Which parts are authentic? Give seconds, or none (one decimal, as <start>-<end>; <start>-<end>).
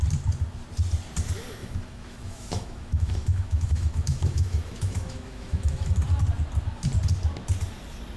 0.0-1.6; 5.9-8.2